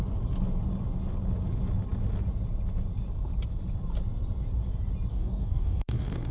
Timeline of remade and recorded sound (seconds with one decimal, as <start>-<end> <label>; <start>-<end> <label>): 0.0-5.1 recorded; 5.1-6.3 remade